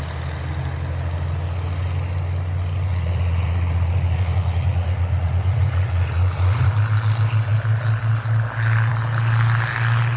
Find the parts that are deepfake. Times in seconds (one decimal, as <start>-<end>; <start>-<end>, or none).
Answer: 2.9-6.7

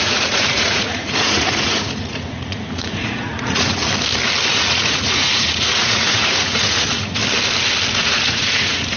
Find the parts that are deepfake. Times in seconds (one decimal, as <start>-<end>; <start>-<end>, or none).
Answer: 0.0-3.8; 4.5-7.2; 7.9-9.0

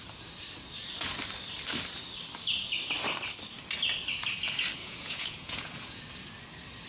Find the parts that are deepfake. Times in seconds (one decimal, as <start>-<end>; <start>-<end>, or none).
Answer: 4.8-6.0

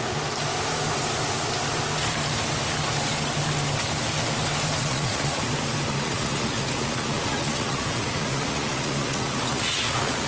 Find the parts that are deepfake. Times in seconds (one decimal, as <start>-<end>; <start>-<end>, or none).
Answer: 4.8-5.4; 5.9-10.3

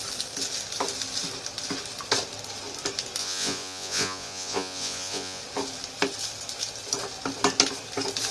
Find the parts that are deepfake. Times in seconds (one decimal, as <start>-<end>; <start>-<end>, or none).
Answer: 3.2-5.4